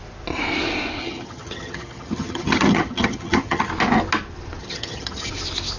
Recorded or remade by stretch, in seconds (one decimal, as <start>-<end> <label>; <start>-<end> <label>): 0.0-1.0 recorded; 1.0-3.7 remade; 3.7-4.6 recorded; 4.6-5.3 remade; 5.3-5.8 recorded